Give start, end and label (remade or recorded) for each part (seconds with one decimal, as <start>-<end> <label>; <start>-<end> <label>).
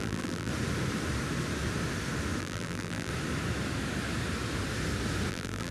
0.0-0.5 remade; 0.5-2.4 recorded; 2.4-3.1 remade; 3.1-5.3 recorded; 5.3-5.7 remade